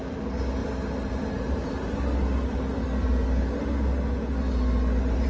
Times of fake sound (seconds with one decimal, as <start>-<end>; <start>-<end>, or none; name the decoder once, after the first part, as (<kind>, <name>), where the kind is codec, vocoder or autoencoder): none